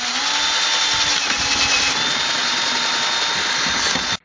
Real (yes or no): yes